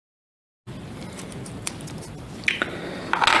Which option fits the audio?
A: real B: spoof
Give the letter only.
A